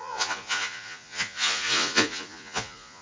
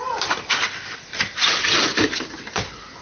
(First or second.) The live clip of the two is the second